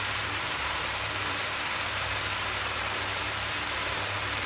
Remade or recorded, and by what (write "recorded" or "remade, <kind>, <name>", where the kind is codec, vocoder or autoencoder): remade, vocoder, BigVGAN v2